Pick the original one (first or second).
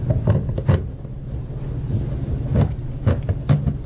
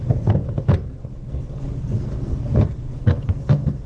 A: first